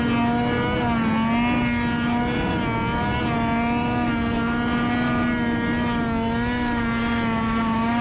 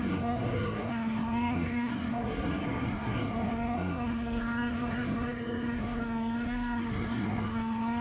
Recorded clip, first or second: first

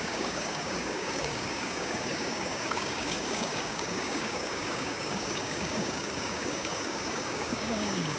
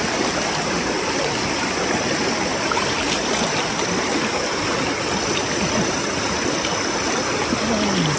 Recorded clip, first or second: second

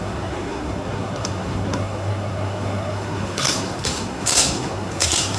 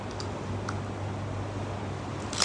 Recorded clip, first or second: second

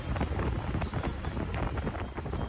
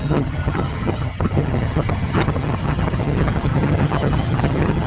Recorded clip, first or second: first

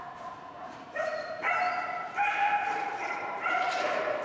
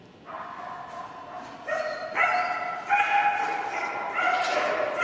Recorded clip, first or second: second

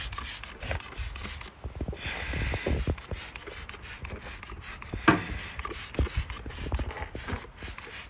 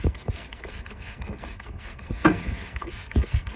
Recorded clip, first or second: first